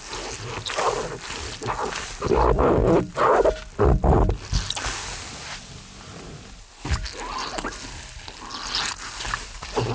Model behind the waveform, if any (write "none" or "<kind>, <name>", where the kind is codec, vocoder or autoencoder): none